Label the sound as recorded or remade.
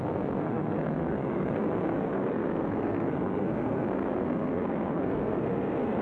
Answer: remade